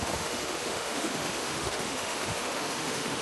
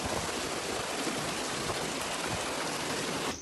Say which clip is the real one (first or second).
second